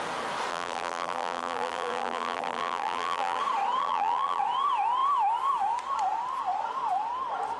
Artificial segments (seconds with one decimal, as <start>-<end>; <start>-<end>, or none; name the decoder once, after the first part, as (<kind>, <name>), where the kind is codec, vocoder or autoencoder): 0.5-3.4 (vocoder, BigVGAN v2); 3.8-4.4